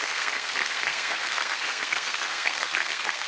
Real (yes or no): no